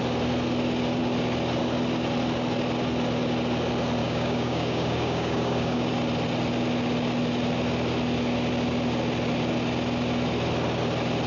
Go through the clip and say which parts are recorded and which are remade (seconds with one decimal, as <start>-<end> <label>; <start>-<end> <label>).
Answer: 0.0-4.0 recorded; 4.0-5.9 remade; 5.9-11.3 recorded